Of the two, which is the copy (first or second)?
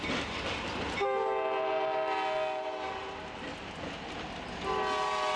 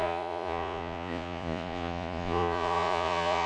second